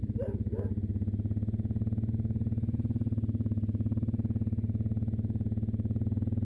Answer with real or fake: real